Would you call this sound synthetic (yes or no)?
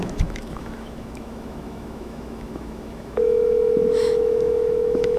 yes